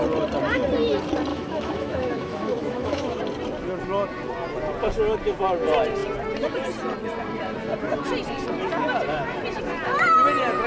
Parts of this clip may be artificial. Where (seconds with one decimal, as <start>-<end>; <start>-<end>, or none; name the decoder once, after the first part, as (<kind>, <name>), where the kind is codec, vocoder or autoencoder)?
1.3-3.2 (autoencoder, DAC-VAE)